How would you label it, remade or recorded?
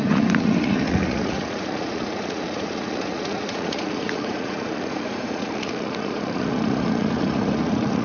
remade